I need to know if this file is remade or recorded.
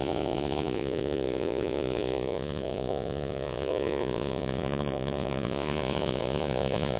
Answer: remade